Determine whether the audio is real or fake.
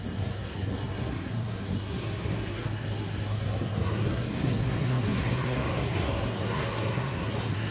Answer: fake